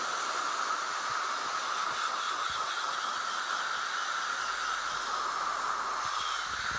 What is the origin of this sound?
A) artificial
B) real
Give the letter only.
B